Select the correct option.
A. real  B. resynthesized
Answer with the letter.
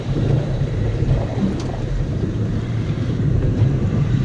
B